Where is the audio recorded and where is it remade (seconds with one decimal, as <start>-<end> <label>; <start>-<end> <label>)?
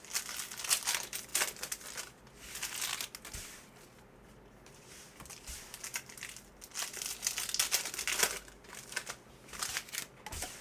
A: 0.0-10.6 recorded